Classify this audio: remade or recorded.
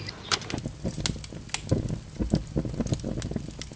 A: recorded